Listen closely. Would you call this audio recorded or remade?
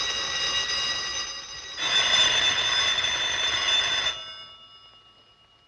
recorded